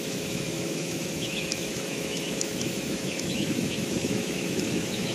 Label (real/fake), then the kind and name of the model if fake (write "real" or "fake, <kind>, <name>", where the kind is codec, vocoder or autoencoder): fake, autoencoder, DAC-VAE